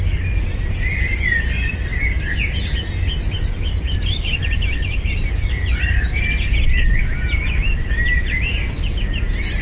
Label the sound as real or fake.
real